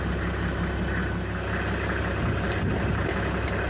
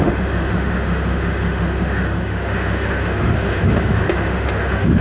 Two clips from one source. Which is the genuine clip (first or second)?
first